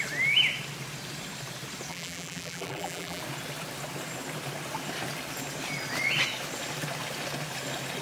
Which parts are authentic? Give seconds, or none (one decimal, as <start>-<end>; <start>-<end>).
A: 0.0-1.9; 3.2-8.0